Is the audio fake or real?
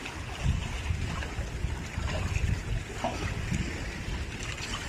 real